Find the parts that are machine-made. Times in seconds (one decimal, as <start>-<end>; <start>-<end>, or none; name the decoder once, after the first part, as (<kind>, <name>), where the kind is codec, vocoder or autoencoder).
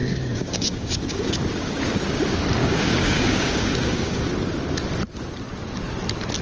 0.0-1.8 (codec, DAC); 2.6-4.3